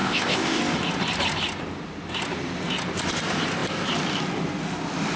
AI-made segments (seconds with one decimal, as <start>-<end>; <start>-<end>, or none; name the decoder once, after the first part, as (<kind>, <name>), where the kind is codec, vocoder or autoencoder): 0.0-0.6 (codec, ZipCodec)